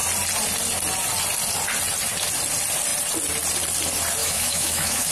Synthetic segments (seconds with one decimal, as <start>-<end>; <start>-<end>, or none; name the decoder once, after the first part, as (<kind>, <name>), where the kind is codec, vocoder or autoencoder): 4.2-5.1 (autoencoder, DAC-VAE)